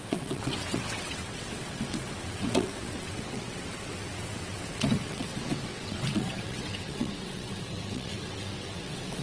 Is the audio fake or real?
fake